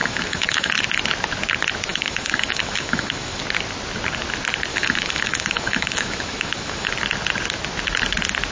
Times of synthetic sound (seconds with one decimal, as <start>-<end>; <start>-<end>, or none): 0.0-0.7; 1.9-3.4; 4.7-6.9